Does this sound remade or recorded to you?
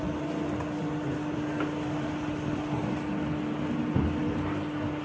recorded